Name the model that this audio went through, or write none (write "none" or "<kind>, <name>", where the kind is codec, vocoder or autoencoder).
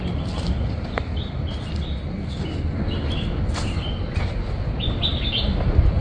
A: none